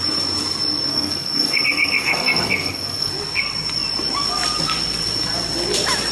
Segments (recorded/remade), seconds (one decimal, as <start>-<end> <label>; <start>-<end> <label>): 0.0-0.9 recorded; 0.9-3.1 remade; 3.1-6.1 recorded